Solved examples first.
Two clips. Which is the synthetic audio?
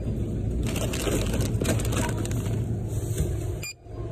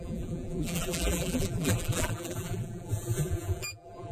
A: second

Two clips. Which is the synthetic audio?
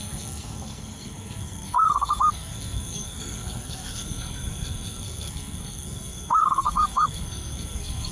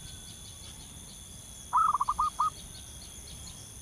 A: first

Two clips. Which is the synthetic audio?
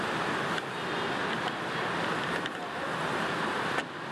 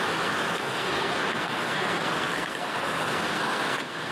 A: second